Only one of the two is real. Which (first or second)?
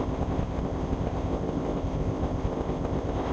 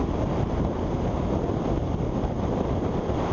second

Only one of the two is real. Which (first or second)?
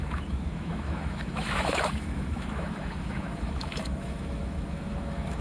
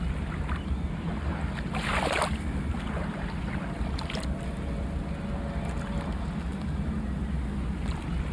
second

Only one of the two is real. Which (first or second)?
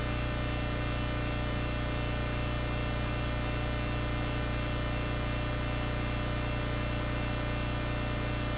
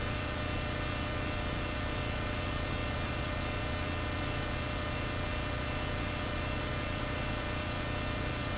first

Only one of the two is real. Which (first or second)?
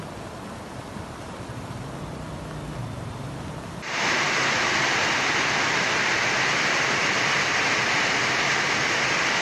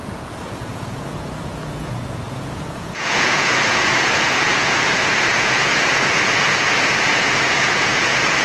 first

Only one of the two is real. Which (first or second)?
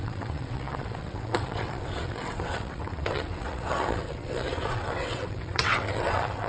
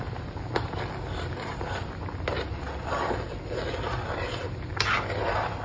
second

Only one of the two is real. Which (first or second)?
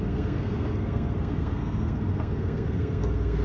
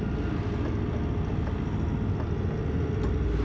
second